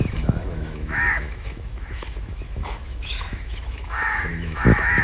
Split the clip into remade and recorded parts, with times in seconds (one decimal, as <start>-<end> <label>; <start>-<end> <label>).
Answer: 0.0-5.0 remade